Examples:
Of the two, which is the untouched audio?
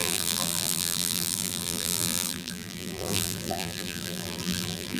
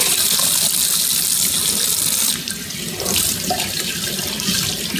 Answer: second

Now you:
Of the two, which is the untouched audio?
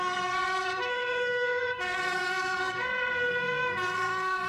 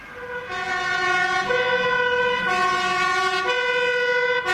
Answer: second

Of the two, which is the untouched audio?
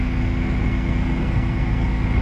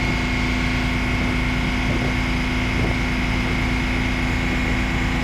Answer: second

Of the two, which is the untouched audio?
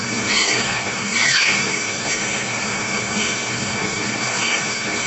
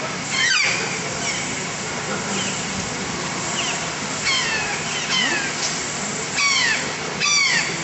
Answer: second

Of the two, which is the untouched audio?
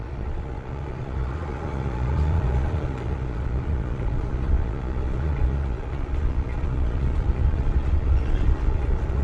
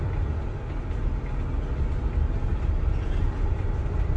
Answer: second